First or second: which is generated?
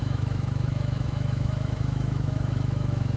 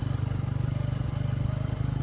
first